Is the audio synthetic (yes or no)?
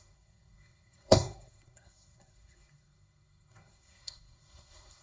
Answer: yes